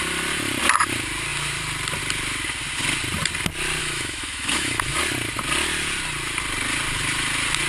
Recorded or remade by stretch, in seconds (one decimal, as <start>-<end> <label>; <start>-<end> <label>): 0.0-3.8 recorded; 3.8-5.0 remade; 5.0-7.7 recorded